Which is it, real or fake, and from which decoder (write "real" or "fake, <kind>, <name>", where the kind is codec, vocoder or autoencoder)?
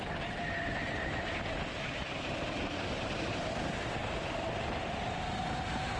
real